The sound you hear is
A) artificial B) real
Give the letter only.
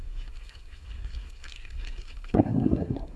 A